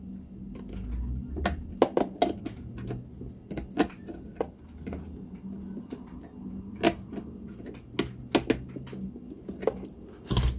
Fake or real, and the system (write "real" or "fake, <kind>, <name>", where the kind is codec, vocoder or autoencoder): real